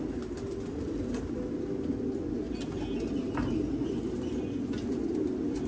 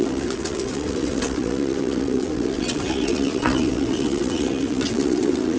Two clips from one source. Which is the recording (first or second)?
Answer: first